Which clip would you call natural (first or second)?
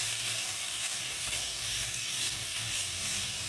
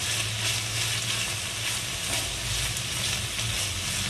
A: second